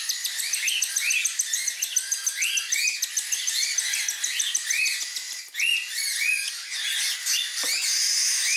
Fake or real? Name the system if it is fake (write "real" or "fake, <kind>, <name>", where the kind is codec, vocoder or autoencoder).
real